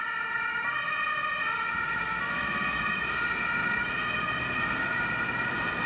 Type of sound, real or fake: real